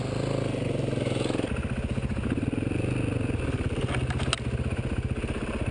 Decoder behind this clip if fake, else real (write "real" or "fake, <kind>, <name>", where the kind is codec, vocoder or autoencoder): real